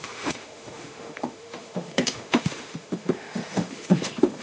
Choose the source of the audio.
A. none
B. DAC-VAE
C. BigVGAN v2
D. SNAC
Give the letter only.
B